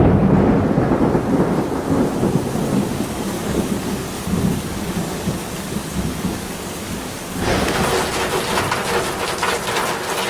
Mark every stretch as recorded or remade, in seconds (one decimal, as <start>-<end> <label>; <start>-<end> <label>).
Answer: 0.0-2.7 recorded; 2.7-7.7 remade; 7.7-10.3 recorded